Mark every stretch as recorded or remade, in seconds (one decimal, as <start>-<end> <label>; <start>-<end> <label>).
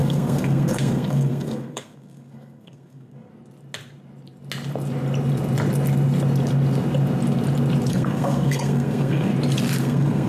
0.0-3.3 remade; 3.3-7.9 recorded; 7.9-9.3 remade; 9.3-9.8 recorded; 9.8-10.3 remade